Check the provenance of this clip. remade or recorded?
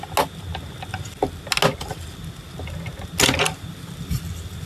recorded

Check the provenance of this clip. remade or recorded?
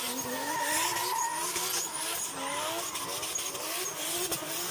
recorded